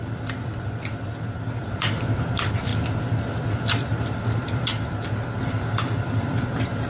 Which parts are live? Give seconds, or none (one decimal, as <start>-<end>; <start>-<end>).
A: 2.7-3.2; 4.7-5.4